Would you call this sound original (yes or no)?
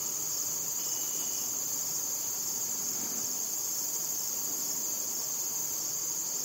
no